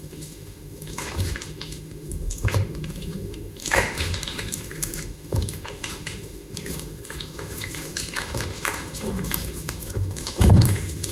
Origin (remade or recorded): remade